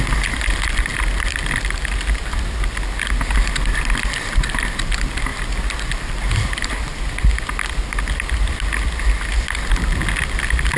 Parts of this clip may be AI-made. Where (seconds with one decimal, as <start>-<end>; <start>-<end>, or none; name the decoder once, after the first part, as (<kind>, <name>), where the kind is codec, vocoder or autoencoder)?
none